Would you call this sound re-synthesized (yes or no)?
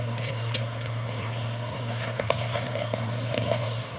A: yes